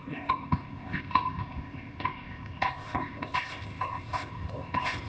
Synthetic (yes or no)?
yes